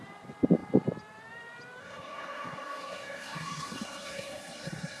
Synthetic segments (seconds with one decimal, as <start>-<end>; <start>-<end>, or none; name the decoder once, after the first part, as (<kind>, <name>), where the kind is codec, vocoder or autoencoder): 1.8-5.0 (codec, SNAC)